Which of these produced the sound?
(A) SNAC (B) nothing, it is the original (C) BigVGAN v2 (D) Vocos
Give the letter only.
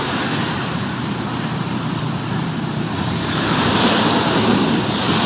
C